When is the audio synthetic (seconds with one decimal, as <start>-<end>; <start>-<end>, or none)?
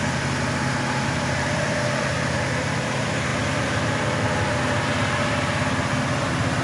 none